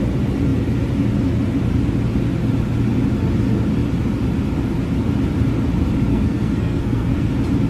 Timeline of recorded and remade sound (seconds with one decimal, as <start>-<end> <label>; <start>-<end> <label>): 0.0-6.1 recorded; 6.1-7.3 remade; 7.3-7.7 recorded